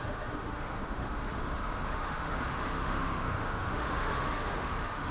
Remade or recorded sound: remade